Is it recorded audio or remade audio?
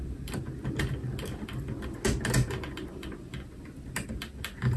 recorded